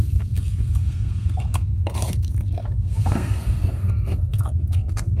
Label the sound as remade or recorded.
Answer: remade